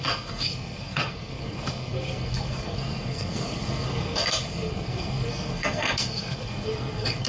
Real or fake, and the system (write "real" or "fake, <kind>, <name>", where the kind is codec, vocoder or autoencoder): fake, codec, SNAC